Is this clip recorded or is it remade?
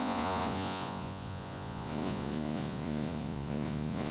remade